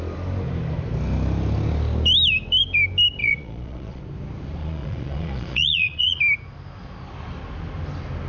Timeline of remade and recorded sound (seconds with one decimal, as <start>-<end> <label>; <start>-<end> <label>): 0.0-3.2 recorded; 3.2-4.0 remade; 4.0-4.6 recorded; 4.6-6.2 remade; 6.2-8.3 recorded